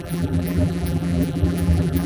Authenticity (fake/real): fake